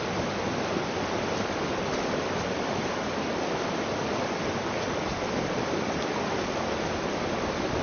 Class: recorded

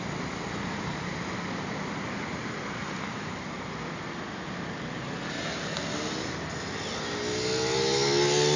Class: recorded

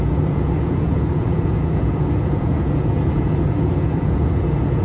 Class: remade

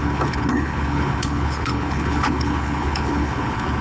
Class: remade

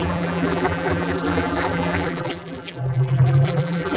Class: remade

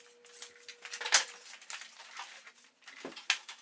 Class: recorded